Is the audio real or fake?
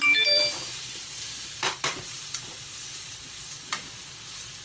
fake